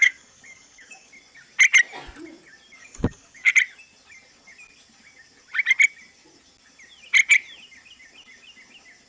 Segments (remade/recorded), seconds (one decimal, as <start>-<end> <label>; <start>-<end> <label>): 0.0-1.1 remade; 1.1-2.8 recorded; 2.8-3.5 remade; 3.5-9.1 recorded